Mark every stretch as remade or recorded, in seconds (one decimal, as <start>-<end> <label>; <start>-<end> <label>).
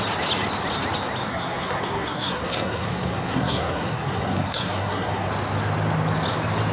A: 0.0-1.3 recorded; 1.3-5.3 remade; 5.3-6.7 recorded